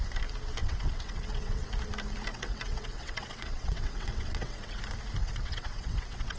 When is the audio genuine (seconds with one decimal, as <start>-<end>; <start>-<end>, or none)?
0.0-0.6; 1.7-2.3; 4.8-5.2